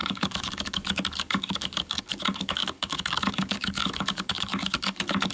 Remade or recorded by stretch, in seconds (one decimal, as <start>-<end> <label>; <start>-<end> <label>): 0.0-5.3 remade